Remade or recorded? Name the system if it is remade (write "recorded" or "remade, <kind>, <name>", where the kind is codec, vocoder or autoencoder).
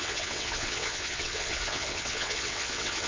remade, vocoder, WaveNeXt